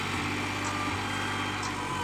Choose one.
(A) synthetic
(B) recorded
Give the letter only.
B